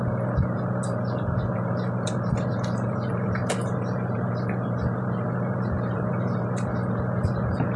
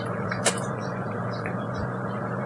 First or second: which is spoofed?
second